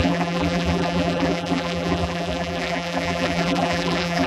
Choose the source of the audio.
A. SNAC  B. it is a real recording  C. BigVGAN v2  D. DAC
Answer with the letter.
C